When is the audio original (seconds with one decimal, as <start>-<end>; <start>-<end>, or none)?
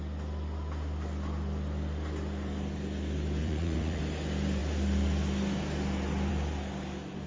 0.0-3.4; 4.0-7.3